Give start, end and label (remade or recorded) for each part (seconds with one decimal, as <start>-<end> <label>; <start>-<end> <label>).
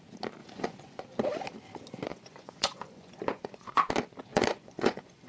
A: 0.0-0.4 recorded; 0.4-1.0 remade; 1.0-2.1 recorded; 2.1-3.8 remade; 3.8-4.3 recorded; 4.3-5.3 remade